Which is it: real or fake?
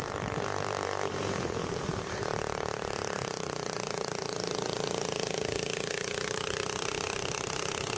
fake